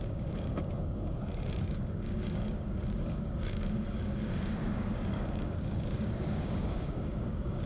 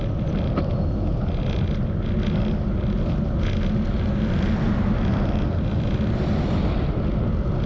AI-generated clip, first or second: first